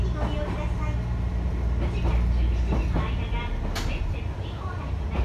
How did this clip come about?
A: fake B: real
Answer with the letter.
B